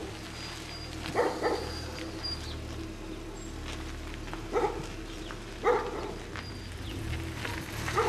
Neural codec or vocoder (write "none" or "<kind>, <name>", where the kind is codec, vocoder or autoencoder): none